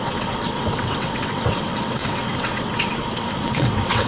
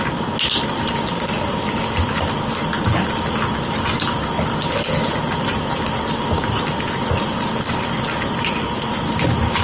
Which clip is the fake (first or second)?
first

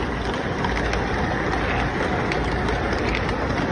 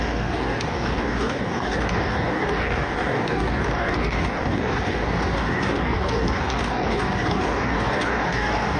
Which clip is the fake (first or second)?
second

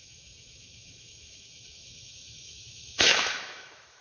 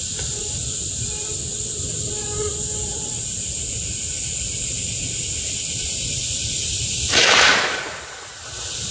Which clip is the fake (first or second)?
first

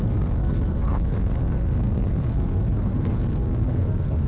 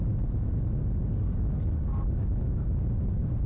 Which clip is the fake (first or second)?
first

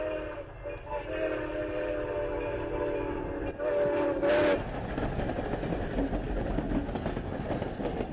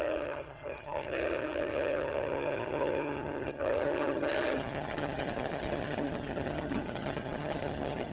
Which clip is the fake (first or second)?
second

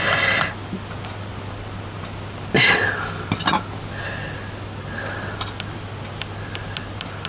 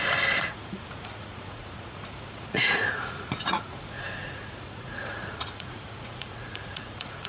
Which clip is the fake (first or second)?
second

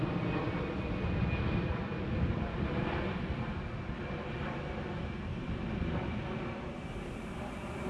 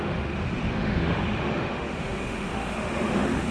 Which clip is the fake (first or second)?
second